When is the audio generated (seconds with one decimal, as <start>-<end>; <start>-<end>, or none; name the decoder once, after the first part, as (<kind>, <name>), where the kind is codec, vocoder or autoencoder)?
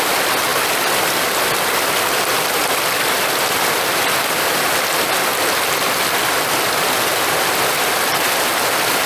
none